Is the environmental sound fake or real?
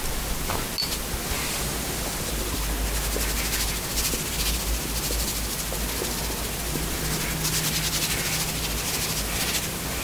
real